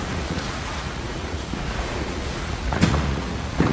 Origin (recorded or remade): remade